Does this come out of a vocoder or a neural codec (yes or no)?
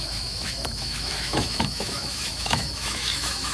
yes